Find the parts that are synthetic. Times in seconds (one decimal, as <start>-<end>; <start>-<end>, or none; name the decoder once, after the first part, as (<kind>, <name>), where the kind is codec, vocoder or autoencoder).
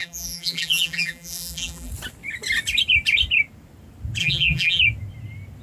0.0-1.9 (vocoder, BigVGAN v2); 4.2-4.8